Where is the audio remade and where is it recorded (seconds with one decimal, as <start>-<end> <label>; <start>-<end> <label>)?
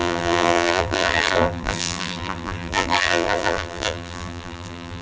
0.0-5.0 remade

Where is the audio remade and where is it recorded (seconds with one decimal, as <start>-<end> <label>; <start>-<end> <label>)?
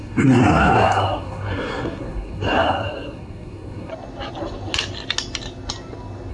0.0-3.9 remade; 3.9-6.3 recorded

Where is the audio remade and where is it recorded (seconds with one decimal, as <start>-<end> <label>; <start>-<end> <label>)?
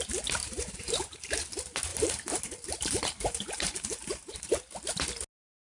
0.0-0.4 recorded; 0.4-1.0 remade; 1.0-1.9 recorded; 1.9-4.5 remade; 4.5-5.7 recorded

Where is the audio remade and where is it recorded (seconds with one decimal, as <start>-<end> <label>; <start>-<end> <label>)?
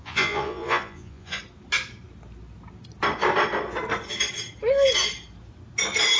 0.0-1.4 remade; 1.4-6.2 recorded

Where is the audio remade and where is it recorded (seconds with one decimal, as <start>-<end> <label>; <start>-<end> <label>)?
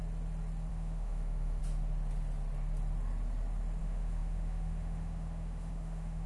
0.0-0.7 recorded; 0.7-1.6 remade; 1.6-3.8 recorded; 3.8-6.3 remade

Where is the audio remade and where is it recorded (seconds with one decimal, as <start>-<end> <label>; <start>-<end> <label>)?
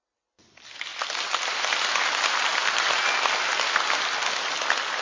0.0-0.9 remade; 0.9-1.6 recorded; 1.6-2.5 remade; 2.5-5.0 recorded